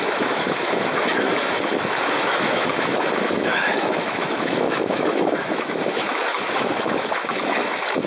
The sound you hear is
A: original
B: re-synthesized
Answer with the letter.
B